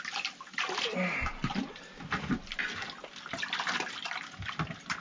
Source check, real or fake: real